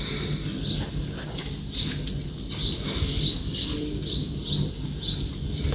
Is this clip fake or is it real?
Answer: real